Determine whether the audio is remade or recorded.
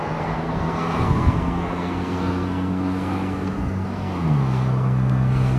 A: remade